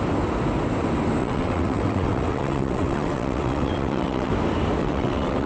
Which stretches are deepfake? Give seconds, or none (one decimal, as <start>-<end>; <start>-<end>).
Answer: 1.2-4.3; 4.8-5.5